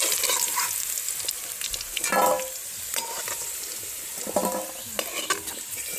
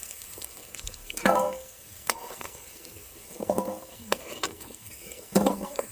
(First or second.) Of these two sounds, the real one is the first